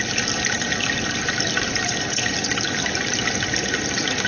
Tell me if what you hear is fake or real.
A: real